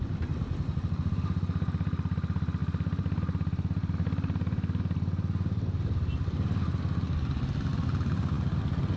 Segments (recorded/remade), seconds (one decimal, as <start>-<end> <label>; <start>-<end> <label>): 0.0-9.0 recorded